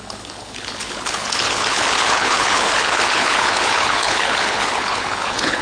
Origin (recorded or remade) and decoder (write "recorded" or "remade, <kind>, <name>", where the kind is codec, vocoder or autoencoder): remade, codec, HILCodec